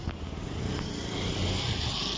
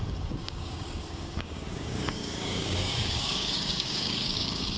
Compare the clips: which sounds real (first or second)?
first